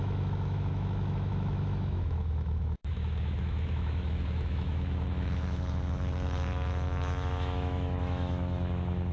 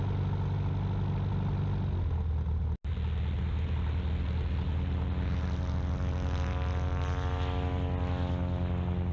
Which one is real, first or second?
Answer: second